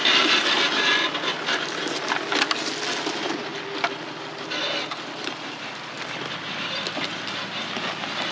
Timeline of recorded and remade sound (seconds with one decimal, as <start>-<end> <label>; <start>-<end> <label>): 0.0-0.6 remade; 0.6-3.5 recorded; 3.5-7.0 remade; 7.0-8.3 recorded